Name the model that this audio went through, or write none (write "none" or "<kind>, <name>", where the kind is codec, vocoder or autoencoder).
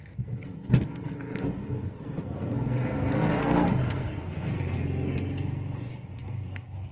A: codec, SNAC